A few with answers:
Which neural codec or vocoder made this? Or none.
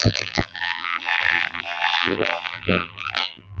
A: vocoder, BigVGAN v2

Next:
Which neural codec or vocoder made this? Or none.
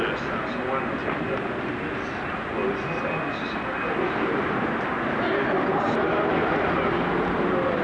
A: none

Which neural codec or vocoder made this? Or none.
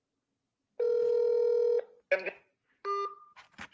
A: none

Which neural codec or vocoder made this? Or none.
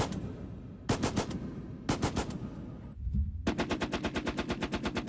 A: none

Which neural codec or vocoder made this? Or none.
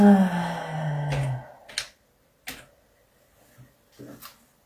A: none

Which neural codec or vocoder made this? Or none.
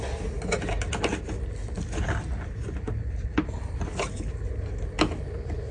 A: none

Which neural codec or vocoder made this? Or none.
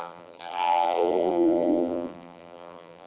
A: vocoder, BigVGAN v2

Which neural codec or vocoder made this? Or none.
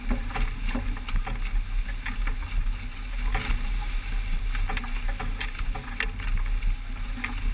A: none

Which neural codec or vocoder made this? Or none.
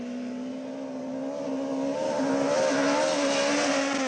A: none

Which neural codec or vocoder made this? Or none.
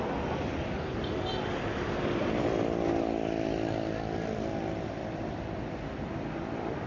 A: none